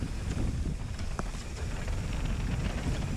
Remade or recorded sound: recorded